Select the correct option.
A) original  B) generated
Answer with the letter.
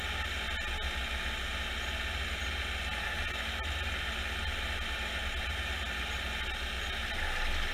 A